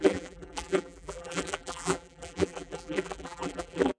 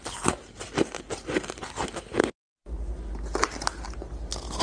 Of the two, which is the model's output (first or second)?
first